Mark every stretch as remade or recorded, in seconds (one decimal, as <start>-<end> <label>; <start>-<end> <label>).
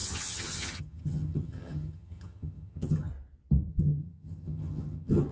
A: 0.0-3.1 remade; 3.1-3.7 recorded; 3.7-5.3 remade